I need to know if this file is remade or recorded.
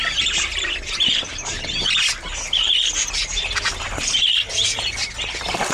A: recorded